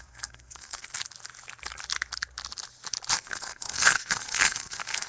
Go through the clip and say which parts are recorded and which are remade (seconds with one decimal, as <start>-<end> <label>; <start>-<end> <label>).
0.0-0.9 remade; 0.9-3.2 recorded; 3.2-5.1 remade